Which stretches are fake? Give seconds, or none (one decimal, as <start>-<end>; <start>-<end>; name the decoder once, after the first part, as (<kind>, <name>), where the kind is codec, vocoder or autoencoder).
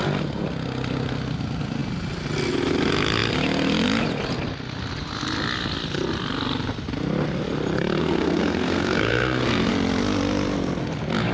8.0-9.7 (codec, SNAC)